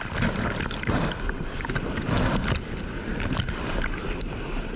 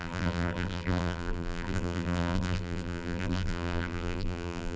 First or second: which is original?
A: first